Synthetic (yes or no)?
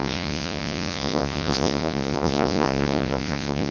yes